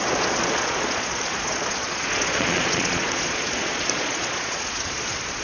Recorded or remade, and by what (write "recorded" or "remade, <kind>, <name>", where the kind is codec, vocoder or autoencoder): remade, vocoder, Vocos